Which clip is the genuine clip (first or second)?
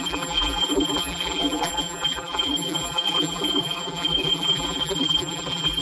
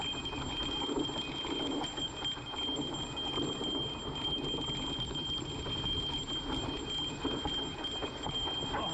second